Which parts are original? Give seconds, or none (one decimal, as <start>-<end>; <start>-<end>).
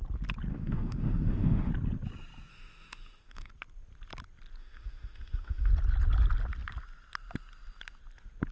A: 0.0-0.5; 1.7-2.5; 3.5-4.6; 5.7-8.5